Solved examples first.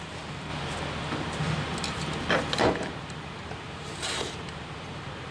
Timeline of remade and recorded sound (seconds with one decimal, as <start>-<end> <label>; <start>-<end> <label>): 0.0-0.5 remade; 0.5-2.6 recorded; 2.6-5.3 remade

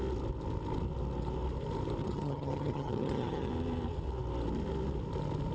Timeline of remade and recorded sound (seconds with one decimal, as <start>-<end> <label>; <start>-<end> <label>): 0.0-2.0 recorded; 2.0-3.5 remade; 3.5-5.5 recorded

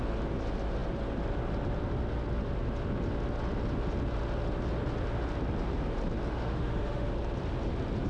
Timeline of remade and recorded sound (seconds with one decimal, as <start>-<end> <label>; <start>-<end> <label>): 0.0-6.3 recorded; 6.3-7.1 remade; 7.1-8.1 recorded

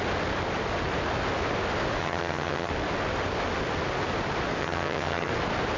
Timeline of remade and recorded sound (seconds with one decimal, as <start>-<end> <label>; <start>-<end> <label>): 0.0-2.0 recorded; 2.0-2.7 remade; 2.7-4.6 recorded; 4.6-5.3 remade; 5.3-5.8 recorded

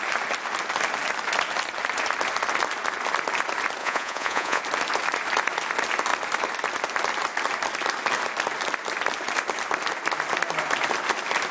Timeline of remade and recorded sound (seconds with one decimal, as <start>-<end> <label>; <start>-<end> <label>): 0.0-3.8 recorded; 3.8-4.6 remade; 4.6-11.5 recorded

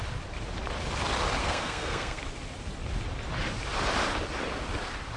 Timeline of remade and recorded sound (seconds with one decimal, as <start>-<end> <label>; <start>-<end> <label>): 0.0-1.4 recorded; 1.4-2.2 remade; 2.2-5.2 recorded